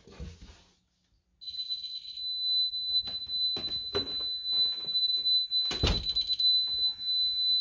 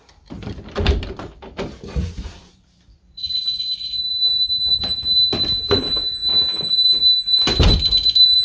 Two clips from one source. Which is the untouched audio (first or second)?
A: first